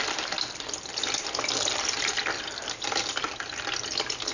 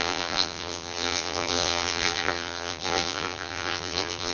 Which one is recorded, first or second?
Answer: first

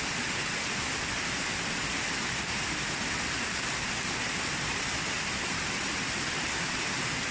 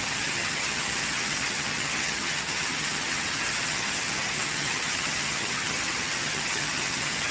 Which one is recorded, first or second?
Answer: first